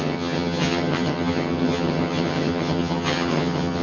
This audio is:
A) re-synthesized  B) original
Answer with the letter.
A